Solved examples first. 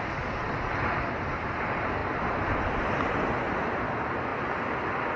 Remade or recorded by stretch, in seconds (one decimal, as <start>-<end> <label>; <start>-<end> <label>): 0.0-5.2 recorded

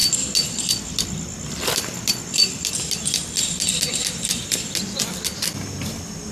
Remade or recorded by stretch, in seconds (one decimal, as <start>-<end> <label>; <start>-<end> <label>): 0.0-6.3 recorded

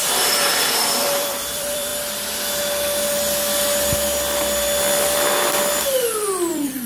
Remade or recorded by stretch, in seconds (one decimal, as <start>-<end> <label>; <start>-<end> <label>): 0.0-1.9 remade; 1.9-5.8 recorded; 5.8-6.9 remade

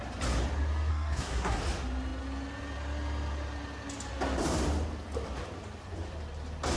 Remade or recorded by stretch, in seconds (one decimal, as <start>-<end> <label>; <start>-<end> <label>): 0.0-0.9 recorded; 0.9-1.6 remade; 1.6-6.8 recorded

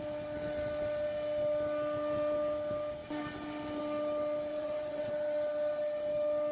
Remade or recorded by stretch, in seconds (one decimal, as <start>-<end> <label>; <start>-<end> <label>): 0.0-4.5 recorded; 4.5-5.1 remade; 5.1-6.5 recorded

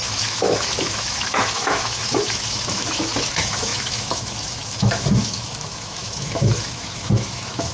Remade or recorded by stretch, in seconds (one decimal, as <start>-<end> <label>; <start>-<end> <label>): 0.0-7.7 remade